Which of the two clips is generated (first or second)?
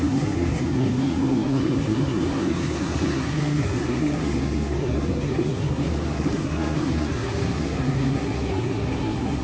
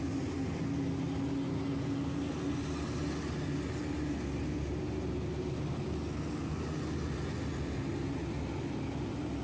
first